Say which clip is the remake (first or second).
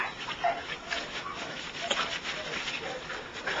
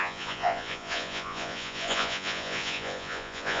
second